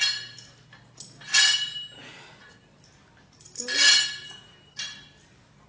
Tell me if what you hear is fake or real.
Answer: real